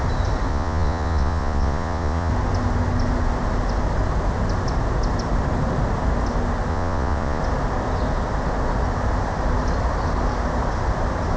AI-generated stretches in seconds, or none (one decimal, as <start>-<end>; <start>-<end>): 0.5-2.3; 6.7-7.4